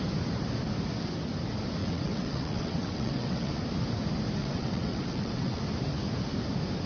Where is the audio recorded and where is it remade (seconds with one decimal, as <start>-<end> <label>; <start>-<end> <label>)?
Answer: 0.0-1.8 recorded; 1.8-3.5 remade; 3.5-4.4 recorded; 4.4-5.6 remade; 5.6-6.9 recorded